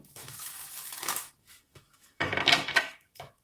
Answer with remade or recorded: remade